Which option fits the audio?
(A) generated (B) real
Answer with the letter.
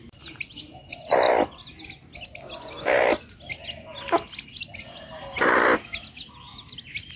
B